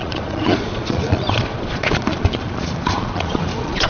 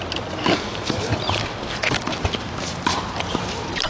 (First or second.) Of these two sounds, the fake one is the first